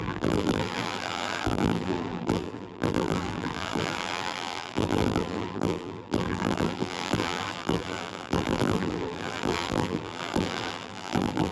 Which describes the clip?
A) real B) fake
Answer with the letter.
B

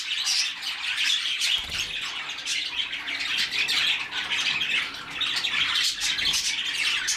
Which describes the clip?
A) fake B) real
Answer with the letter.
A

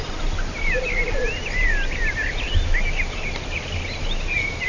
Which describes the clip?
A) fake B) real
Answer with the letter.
A